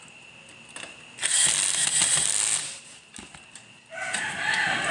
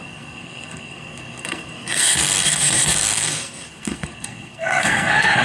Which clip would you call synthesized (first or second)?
second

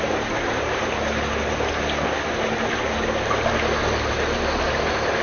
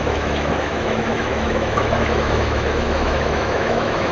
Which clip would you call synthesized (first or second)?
second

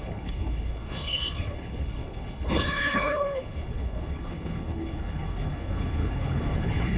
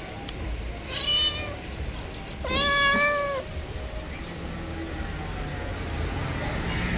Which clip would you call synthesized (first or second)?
first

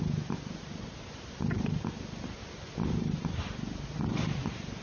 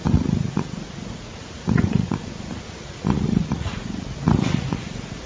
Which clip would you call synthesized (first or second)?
second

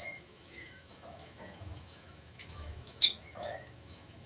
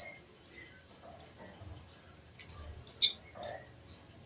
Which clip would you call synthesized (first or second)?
first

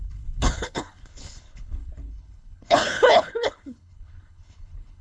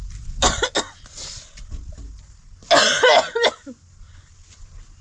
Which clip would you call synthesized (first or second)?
first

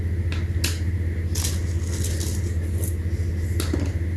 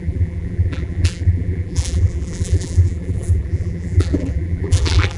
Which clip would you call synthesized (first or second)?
second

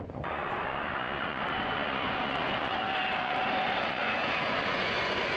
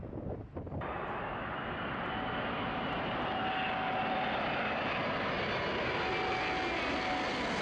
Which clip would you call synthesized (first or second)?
first